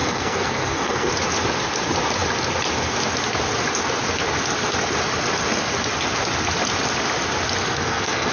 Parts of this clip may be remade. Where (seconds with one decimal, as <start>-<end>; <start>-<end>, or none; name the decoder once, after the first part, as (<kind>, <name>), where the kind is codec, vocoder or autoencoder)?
0.0-1.1 (codec, SNAC); 7.6-8.3